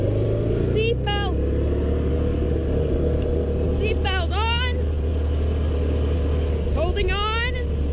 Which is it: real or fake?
real